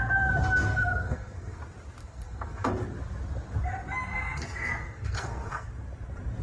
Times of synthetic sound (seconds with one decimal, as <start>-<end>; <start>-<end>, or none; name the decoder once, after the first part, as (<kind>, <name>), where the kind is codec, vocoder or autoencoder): 0.7-1.6 (codec, SNAC); 2.0-2.7; 4.1-5.7